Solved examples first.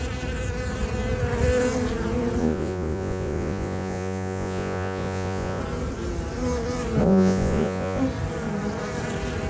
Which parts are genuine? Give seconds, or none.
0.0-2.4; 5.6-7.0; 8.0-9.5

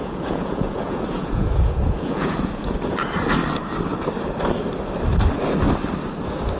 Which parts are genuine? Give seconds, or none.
2.9-6.6

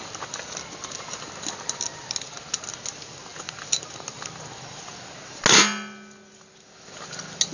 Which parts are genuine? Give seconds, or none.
0.0-7.5

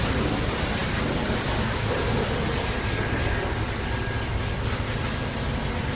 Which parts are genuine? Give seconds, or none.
0.0-6.0

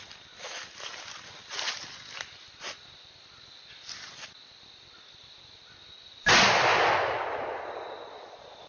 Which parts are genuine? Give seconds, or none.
0.0-8.7

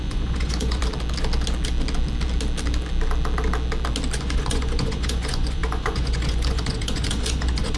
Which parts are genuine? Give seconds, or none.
0.8-4.2